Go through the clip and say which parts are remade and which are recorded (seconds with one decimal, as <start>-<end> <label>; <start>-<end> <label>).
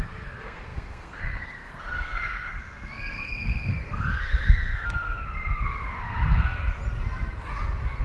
0.0-6.8 remade; 6.8-8.0 recorded